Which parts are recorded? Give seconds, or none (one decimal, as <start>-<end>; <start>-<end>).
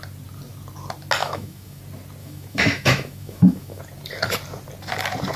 0.0-1.2; 1.8-2.2; 3.8-5.4